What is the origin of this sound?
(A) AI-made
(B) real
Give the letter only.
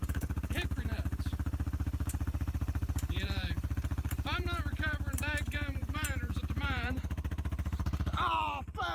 A